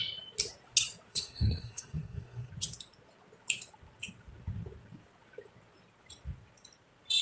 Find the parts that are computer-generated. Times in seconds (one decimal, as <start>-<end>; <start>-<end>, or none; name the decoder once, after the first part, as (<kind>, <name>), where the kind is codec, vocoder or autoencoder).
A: 1.1-2.5 (codec, SNAC)